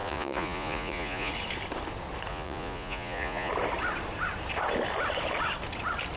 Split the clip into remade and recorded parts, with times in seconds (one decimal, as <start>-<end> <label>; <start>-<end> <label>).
0.0-1.3 remade; 1.3-2.3 recorded; 2.3-3.5 remade; 3.5-6.2 recorded